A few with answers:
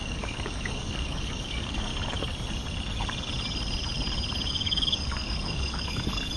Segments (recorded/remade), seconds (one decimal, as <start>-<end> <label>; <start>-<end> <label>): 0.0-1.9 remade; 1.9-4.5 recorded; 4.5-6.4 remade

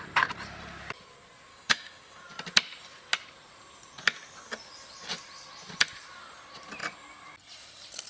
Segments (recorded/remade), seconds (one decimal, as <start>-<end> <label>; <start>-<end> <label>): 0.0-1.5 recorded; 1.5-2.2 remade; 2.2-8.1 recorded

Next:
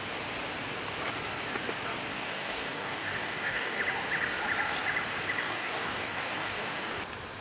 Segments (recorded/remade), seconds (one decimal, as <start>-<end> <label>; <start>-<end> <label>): 0.0-2.1 recorded; 2.1-3.8 remade; 3.8-5.4 recorded; 5.4-7.0 remade; 7.0-7.4 recorded